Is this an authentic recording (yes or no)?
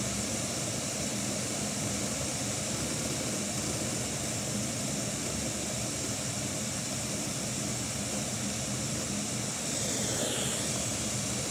yes